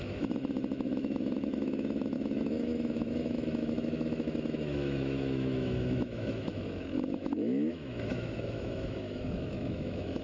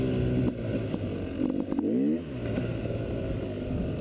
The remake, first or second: first